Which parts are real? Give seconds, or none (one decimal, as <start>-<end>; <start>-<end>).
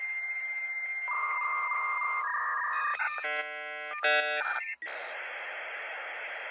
0.0-6.5